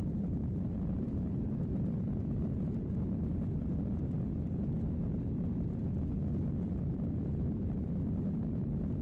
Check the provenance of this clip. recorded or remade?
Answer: remade